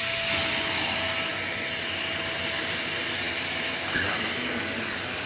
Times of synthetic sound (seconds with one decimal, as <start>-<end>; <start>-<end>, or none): 4.4-5.3